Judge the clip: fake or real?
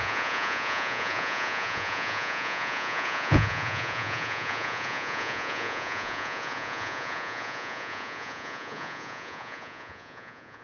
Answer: fake